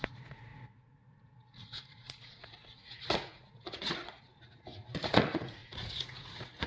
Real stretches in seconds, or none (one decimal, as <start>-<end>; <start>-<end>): none